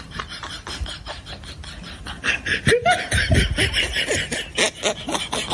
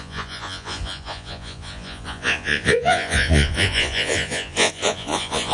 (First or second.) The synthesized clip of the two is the second